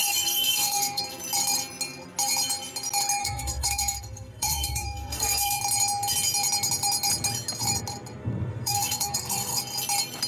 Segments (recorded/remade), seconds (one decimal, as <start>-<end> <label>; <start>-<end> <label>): 0.0-1.0 remade; 1.0-3.2 recorded; 3.2-5.6 remade; 5.6-8.2 recorded; 8.2-9.6 remade; 9.6-10.3 recorded